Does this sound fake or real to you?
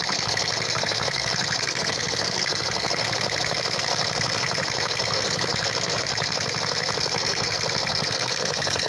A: fake